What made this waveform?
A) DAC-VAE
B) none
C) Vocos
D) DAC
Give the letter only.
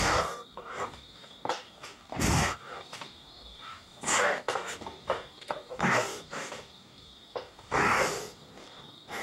D